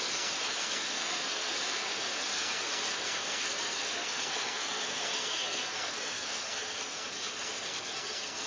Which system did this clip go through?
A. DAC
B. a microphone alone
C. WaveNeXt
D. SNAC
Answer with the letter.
D